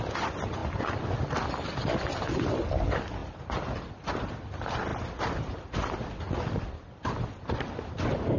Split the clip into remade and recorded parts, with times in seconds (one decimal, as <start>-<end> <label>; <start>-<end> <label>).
0.0-0.6 recorded; 0.6-2.7 remade; 2.7-8.4 recorded